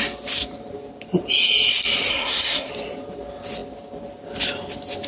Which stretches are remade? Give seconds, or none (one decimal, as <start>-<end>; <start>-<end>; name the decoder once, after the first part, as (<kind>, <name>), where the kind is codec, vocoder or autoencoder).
2.1-2.7 (codec, SNAC)